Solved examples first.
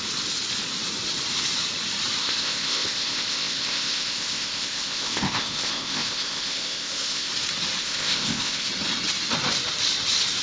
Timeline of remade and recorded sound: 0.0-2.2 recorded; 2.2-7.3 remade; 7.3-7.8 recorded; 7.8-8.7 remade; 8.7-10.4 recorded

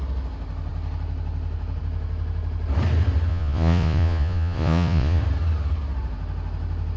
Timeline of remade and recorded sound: 0.0-3.3 recorded; 3.3-5.2 remade; 5.2-7.0 recorded

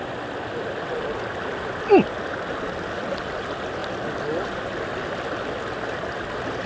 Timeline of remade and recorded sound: 0.0-6.7 recorded

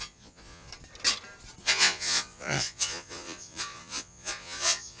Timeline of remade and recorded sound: 0.0-0.7 remade; 0.7-1.6 recorded; 1.6-5.0 remade